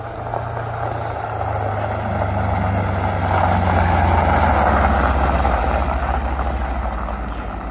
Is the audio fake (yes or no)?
no